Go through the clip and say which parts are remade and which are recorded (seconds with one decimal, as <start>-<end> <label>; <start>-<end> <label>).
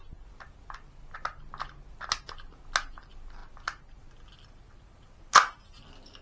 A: 0.0-6.2 recorded